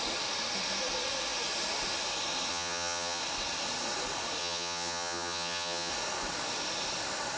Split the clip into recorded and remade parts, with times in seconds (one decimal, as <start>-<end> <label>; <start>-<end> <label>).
0.0-2.5 recorded; 2.5-3.2 remade; 3.2-4.4 recorded; 4.4-5.9 remade; 5.9-7.4 recorded